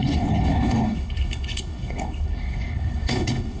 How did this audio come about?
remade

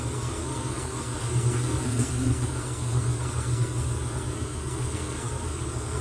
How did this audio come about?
remade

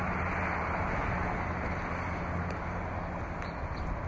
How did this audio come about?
recorded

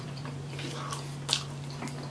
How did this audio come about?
remade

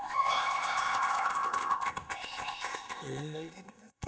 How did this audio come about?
remade